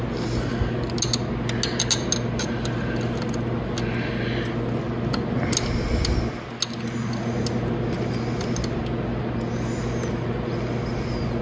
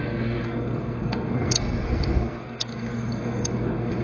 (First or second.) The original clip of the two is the first